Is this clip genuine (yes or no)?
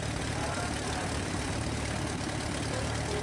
yes